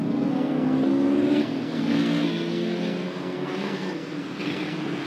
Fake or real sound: fake